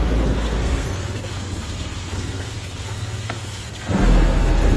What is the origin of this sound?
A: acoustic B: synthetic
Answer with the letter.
B